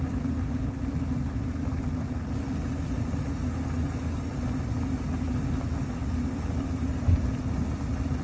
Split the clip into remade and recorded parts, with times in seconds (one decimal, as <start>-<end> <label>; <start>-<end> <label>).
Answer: 0.0-8.2 recorded